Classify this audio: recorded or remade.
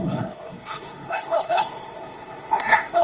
remade